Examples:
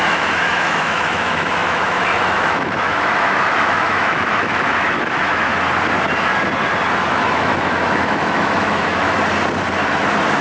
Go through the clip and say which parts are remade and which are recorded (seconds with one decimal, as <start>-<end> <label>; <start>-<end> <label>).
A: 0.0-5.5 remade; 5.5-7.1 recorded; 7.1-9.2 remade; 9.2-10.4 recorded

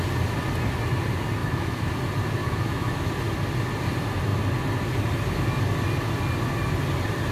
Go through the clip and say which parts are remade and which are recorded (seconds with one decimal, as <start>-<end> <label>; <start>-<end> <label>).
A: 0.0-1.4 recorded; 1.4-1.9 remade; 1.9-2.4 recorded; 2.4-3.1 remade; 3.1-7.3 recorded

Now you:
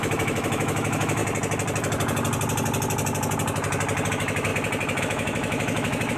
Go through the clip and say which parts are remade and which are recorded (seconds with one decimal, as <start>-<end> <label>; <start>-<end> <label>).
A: 0.0-1.2 remade; 1.2-4.1 recorded; 4.1-4.5 remade; 4.5-5.0 recorded; 5.0-6.2 remade